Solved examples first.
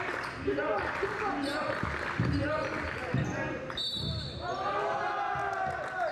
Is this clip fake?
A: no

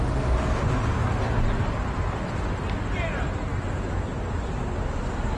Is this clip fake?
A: no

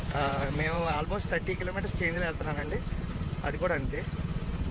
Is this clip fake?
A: yes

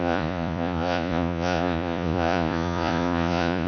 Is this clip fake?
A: yes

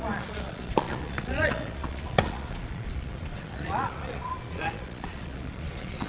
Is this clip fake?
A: yes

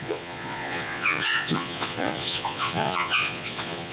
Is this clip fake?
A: yes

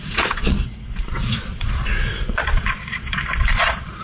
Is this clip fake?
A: yes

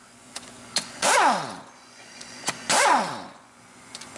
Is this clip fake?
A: yes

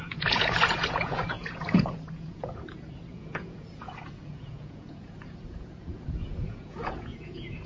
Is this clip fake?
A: yes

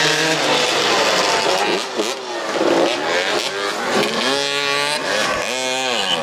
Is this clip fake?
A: no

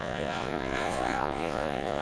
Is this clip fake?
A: yes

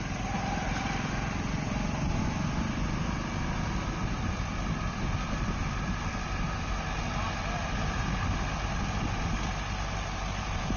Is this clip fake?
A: no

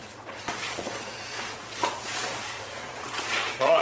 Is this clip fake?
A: yes